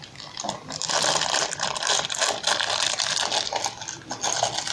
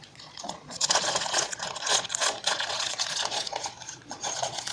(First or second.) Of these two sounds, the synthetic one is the second